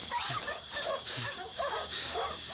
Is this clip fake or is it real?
fake